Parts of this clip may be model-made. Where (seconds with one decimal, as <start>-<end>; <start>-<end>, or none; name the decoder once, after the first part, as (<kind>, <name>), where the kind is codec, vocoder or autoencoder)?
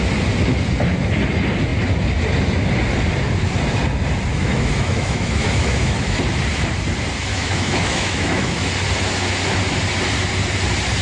4.3-6.2 (autoencoder, DAC-VAE); 7.3-8.7